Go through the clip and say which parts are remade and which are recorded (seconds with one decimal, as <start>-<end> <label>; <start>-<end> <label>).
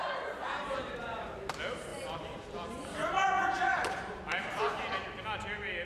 0.0-1.0 remade; 1.0-1.9 recorded; 1.9-2.7 remade; 2.7-3.4 recorded; 3.4-4.6 remade; 4.6-5.8 recorded